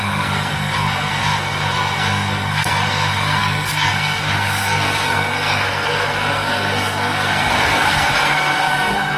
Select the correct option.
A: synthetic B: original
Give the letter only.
A